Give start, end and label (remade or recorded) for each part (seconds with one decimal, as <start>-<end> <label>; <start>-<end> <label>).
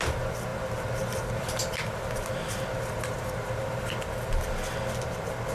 0.0-0.5 recorded; 0.5-3.8 remade; 3.8-5.5 recorded